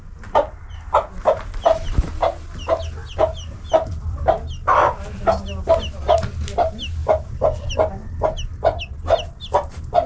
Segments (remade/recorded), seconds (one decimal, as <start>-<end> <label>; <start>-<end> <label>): 0.0-3.0 recorded; 3.0-4.3 remade; 4.3-7.0 recorded; 7.0-7.7 remade; 7.7-10.1 recorded